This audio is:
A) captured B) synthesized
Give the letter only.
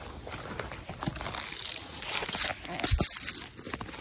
A